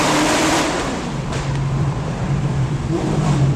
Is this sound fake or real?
fake